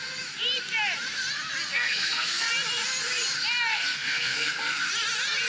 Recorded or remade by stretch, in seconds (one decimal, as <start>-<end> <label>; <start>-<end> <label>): 0.0-1.7 recorded; 1.7-2.5 remade; 2.5-3.7 recorded; 3.7-4.9 remade; 4.9-5.5 recorded